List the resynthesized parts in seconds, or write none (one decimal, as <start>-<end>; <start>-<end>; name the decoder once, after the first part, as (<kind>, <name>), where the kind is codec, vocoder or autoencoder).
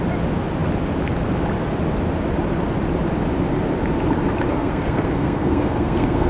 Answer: 4.5-6.3 (codec, SNAC)